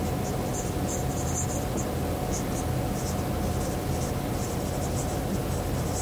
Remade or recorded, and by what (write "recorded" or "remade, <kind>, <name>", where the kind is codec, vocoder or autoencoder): recorded